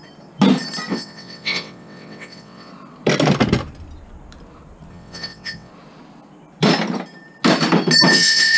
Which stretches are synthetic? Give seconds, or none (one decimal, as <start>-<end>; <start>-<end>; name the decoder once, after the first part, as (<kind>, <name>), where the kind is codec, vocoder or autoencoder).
0.9-2.7 (vocoder, WaveNeXt); 4.9-5.7; 8.1-8.6